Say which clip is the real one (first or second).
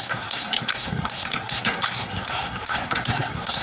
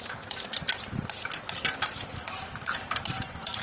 second